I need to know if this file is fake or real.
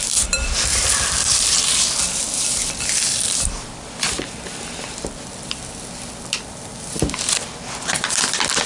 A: fake